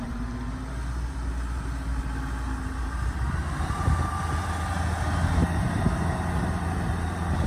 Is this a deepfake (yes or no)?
no